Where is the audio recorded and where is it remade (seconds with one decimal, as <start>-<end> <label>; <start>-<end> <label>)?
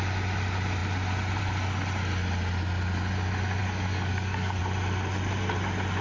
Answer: 0.0-3.6 recorded; 3.6-4.6 remade; 4.6-6.0 recorded